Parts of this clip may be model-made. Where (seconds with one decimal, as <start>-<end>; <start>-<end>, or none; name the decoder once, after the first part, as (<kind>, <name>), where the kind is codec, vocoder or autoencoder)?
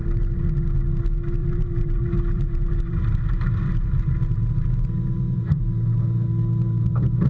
1.4-5.6 (vocoder, BigVGAN v2)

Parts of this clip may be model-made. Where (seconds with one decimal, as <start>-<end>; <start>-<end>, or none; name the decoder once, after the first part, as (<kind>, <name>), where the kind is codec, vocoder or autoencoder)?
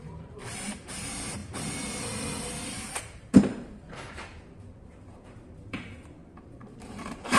0.0-1.4 (vocoder, BigVGAN v2); 2.5-7.4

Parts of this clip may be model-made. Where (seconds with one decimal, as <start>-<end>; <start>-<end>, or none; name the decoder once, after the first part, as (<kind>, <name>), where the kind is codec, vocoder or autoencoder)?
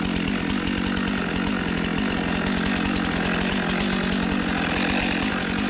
none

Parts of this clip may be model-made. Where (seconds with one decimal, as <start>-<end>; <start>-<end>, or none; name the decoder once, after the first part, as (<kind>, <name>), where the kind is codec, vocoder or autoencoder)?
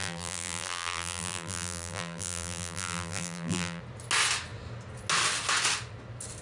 0.0-3.8 (vocoder, BigVGAN v2)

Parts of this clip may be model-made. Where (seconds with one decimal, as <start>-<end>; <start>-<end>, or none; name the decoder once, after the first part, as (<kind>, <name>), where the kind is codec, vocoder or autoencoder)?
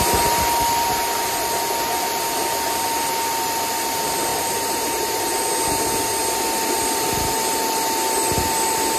4.3-5.4 (vocoder, BigVGAN v2)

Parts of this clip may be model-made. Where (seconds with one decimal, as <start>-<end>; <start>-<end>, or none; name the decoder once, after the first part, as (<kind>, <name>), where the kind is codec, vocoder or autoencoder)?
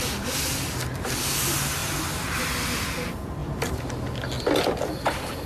1.8-2.5 (vocoder, BigVGAN v2)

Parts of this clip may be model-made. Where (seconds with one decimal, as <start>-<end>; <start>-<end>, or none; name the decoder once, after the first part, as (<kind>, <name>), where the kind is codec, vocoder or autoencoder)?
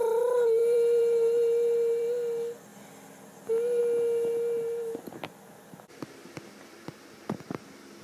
0.6-2.0 (vocoder, BigVGAN v2)